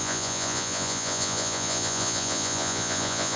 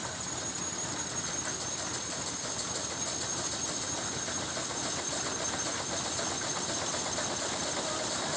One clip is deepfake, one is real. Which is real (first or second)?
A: second